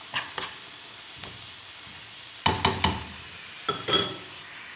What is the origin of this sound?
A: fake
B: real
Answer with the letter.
B